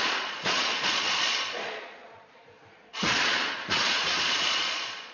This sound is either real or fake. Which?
fake